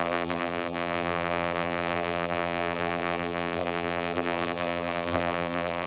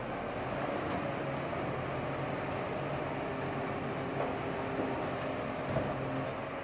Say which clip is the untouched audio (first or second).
second